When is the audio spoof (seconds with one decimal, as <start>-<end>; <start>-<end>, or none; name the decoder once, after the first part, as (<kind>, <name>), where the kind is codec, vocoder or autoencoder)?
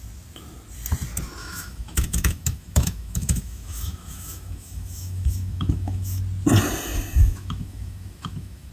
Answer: 1.4-6.2 (autoencoder, DAC-VAE); 7.2-8.7